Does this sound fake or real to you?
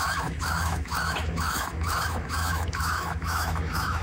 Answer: fake